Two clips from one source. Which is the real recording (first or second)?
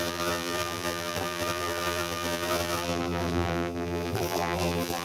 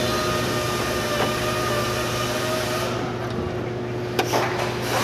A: second